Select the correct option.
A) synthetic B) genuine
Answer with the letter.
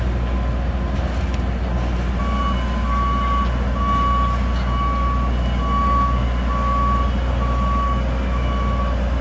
B